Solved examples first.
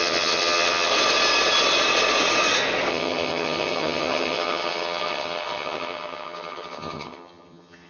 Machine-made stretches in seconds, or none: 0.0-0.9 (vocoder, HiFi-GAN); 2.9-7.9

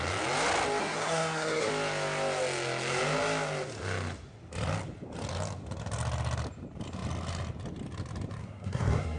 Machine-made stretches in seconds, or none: 0.8-1.7 (codec, SNAC); 8.4-9.2